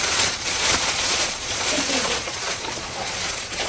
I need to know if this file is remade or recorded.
remade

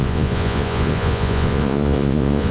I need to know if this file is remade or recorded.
remade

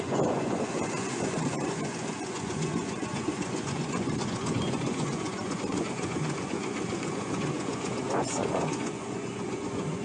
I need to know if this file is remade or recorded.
remade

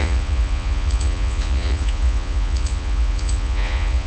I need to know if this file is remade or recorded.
remade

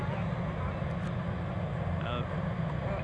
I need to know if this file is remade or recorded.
recorded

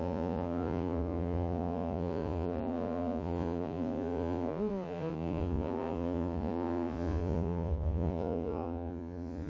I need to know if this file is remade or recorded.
remade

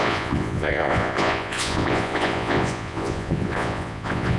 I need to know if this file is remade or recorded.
remade